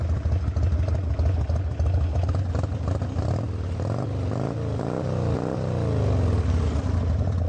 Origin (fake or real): real